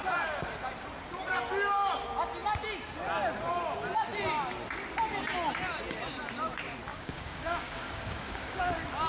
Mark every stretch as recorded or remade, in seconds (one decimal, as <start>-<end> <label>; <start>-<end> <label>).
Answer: 0.0-6.9 recorded; 6.9-8.6 remade; 8.6-9.1 recorded